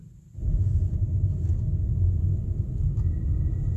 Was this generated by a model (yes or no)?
no